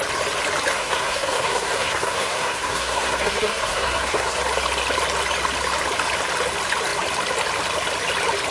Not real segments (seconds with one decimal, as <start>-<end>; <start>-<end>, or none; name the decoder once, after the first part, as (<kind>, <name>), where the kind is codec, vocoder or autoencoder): 0.7-4.4 (codec, SNAC)